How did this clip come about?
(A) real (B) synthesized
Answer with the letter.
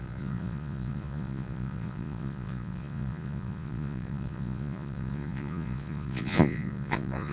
B